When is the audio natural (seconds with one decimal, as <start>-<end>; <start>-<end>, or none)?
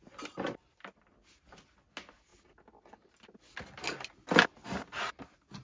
0.0-5.6